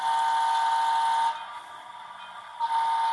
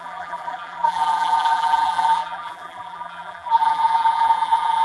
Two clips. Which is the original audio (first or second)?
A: first